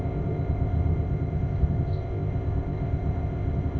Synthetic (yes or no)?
yes